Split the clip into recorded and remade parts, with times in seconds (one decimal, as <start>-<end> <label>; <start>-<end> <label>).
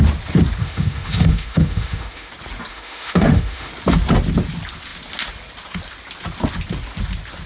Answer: 0.0-0.6 recorded; 0.6-2.3 remade; 2.3-2.7 recorded; 2.7-3.7 remade; 3.7-7.5 recorded